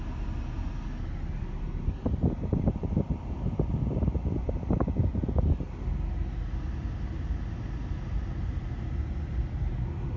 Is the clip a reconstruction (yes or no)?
no